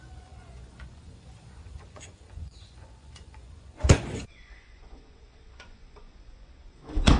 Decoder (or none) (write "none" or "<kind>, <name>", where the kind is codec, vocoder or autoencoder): vocoder, Vocos